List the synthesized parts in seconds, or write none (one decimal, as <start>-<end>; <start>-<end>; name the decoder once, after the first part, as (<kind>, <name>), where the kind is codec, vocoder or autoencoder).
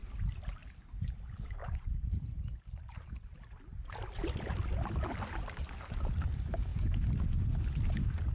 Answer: 1.6-3.1 (vocoder, BigVGAN v2)